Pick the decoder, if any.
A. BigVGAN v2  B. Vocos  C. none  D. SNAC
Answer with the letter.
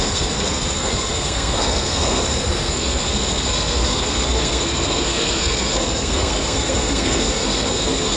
D